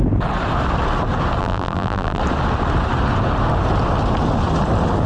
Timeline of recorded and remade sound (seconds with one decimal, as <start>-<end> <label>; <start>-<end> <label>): 0.0-1.4 recorded; 1.4-2.2 remade; 2.2-5.1 recorded